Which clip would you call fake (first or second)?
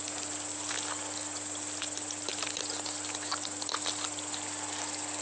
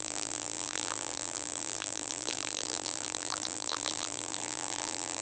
second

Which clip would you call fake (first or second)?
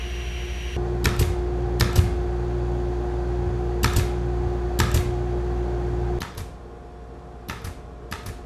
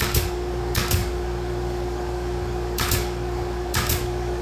second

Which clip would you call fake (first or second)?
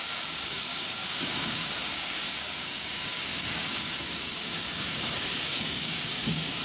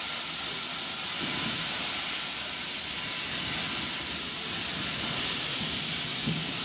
first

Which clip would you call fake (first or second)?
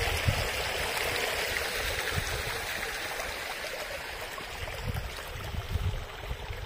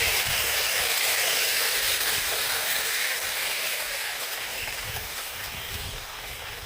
second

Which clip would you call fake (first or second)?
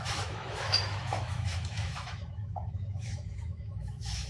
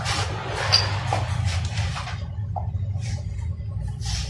first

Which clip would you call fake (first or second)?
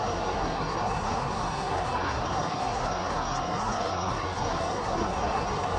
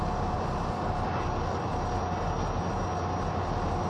first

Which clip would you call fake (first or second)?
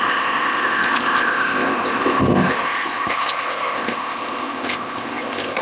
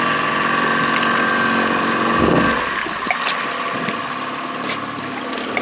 first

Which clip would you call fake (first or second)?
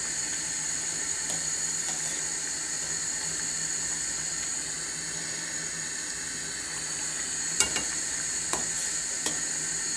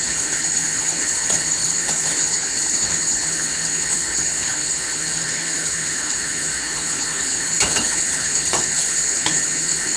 second